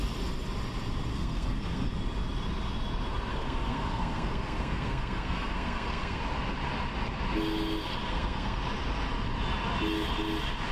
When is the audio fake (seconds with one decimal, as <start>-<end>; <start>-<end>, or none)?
1.1-1.9; 3.3-6.2; 8.0-8.6